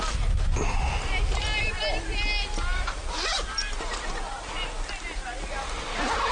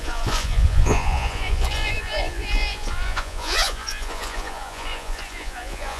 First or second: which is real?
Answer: first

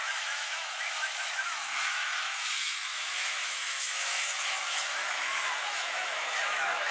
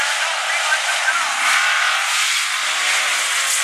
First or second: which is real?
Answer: second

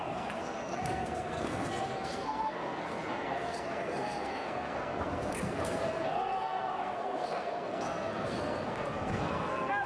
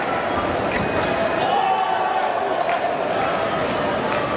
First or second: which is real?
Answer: second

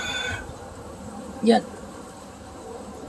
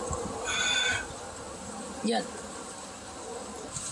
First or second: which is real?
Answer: second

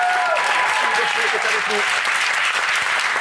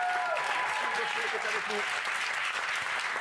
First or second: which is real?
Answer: second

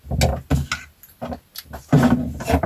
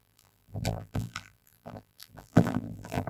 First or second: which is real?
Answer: first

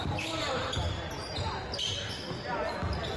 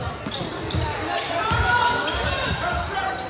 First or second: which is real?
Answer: first